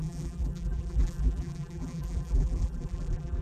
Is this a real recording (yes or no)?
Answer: no